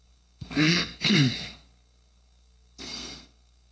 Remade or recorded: remade